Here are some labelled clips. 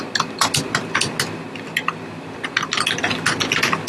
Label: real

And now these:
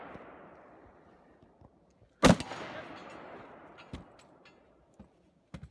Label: real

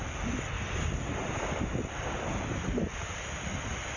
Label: real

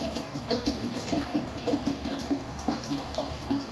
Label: fake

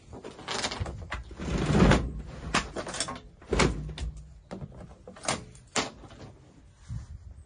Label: real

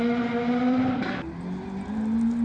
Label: real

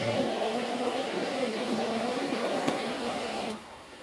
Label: fake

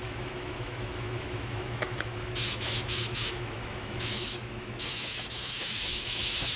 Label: fake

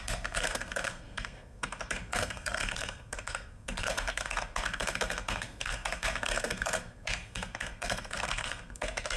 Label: fake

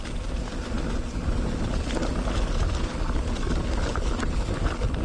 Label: real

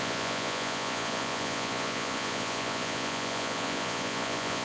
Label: fake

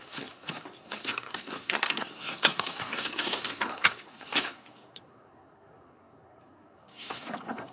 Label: fake